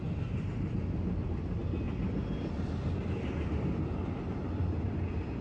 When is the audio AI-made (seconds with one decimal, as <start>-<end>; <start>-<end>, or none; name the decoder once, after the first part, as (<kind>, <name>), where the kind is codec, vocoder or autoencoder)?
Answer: none